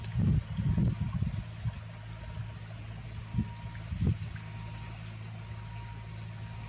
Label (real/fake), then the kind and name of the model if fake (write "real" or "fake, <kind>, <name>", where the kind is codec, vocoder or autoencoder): real